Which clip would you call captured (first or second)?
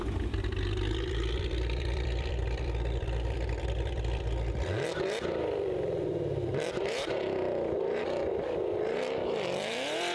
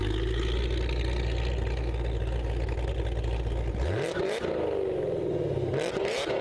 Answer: second